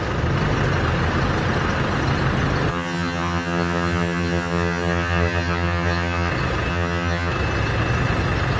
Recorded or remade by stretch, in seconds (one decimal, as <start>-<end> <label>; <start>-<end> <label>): 0.0-2.7 recorded; 2.7-6.3 remade; 6.3-6.7 recorded; 6.7-7.3 remade; 7.3-8.6 recorded